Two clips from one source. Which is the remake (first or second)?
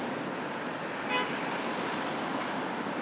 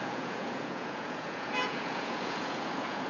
second